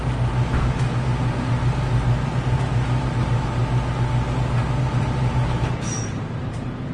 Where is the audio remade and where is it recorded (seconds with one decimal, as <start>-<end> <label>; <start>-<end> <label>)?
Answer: 0.0-3.6 remade; 3.6-4.8 recorded; 4.8-6.9 remade